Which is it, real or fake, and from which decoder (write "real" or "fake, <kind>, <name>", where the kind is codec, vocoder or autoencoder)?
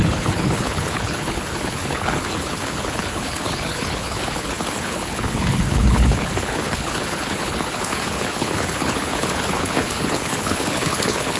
fake, codec, HILCodec